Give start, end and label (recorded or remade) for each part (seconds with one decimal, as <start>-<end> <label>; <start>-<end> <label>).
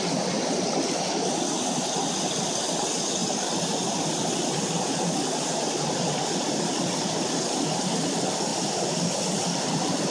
0.0-10.1 recorded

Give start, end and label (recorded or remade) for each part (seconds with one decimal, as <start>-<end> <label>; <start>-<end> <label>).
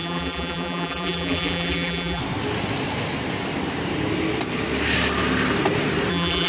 0.0-2.2 remade; 2.2-6.1 recorded; 6.1-6.5 remade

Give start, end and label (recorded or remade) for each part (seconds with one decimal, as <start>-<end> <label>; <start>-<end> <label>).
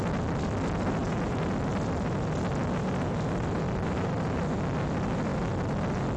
0.0-6.2 recorded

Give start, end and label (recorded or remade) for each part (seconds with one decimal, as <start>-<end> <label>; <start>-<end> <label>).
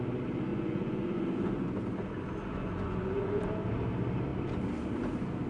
0.0-0.5 recorded; 0.5-1.7 remade; 1.7-2.4 recorded; 2.4-3.4 remade; 3.4-5.5 recorded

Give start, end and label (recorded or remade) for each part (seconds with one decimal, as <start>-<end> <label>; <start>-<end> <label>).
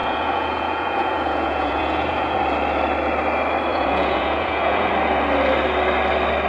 0.0-2.4 remade; 2.4-3.7 recorded; 3.7-4.9 remade; 4.9-6.5 recorded